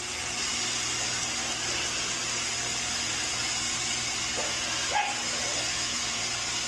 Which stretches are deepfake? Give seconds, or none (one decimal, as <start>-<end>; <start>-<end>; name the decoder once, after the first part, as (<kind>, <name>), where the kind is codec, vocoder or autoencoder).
5.7-6.2 (autoencoder, DAC-VAE)